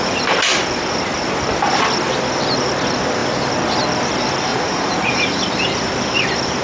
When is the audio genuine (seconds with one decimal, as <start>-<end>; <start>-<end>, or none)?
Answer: 0.0-4.5; 5.4-6.6